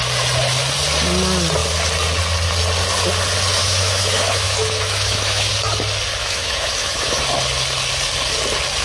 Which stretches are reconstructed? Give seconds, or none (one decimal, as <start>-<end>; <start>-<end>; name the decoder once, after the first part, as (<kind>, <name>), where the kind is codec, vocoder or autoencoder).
3.6-5.5 (autoencoder, DAC-VAE); 6.2-7.2